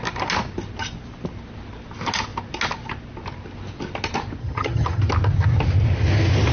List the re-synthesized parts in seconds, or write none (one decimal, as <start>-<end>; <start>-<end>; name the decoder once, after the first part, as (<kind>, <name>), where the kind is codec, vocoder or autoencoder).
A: 4.4-5.0 (vocoder, HiFi-GAN)